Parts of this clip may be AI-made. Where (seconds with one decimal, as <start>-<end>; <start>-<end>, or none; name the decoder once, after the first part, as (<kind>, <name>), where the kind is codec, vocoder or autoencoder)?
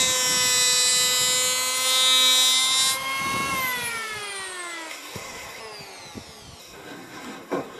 4.9-5.6 (codec, SNAC); 6.6-7.8